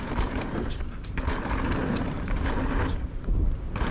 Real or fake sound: fake